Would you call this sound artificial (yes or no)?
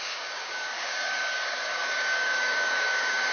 yes